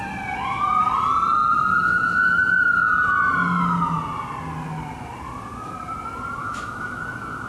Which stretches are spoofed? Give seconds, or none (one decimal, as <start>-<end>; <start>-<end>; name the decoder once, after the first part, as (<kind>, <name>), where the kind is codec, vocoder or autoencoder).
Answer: 6.4-7.0 (autoencoder, DAC-VAE)